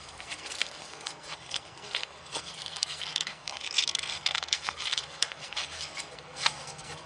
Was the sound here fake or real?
fake